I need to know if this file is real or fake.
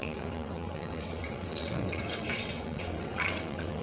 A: fake